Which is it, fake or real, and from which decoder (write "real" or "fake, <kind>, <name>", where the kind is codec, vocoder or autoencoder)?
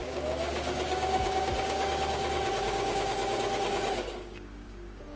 fake, codec, DAC